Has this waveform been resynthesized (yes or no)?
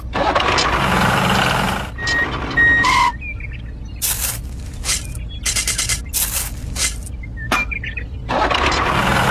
no